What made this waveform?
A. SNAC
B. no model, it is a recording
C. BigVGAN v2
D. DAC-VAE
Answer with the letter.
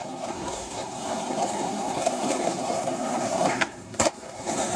A